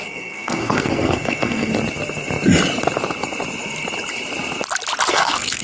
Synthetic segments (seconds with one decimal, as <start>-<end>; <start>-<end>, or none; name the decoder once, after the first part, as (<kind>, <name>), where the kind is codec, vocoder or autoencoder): 0.0-1.7 (codec, SNAC); 5.1-5.6